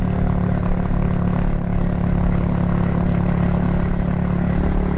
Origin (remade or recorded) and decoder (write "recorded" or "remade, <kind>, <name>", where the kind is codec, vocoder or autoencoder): recorded